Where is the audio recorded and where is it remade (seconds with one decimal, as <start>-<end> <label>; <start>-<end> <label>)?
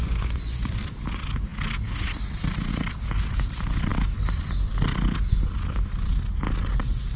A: 0.0-0.8 remade; 0.8-7.2 recorded